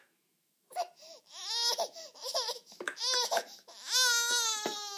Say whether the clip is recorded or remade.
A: remade